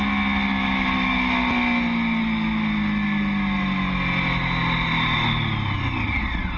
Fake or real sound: real